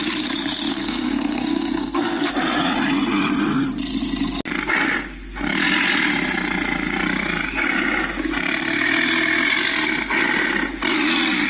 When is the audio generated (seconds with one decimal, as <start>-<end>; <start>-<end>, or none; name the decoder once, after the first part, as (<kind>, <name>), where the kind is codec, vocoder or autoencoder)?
0.7-2.3 (codec, SNAC)